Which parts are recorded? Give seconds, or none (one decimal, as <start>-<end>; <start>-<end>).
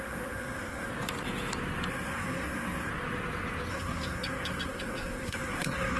0.9-1.9; 2.9-3.7